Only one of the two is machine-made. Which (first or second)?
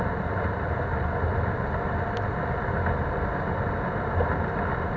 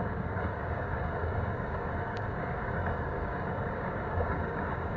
second